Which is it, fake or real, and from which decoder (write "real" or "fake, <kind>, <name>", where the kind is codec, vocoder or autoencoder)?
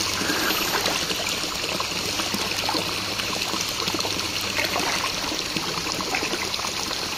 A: real